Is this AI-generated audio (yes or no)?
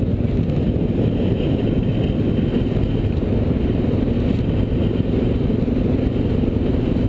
no